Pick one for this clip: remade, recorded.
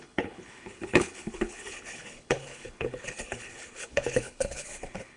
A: remade